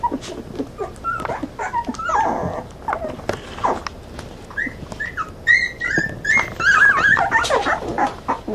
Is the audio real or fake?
real